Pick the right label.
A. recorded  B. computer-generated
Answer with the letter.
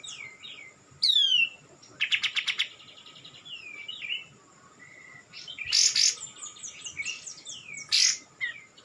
A